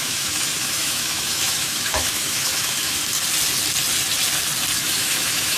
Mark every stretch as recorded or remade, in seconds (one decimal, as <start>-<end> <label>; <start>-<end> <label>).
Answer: 0.0-3.0 remade; 3.0-4.8 recorded; 4.8-5.6 remade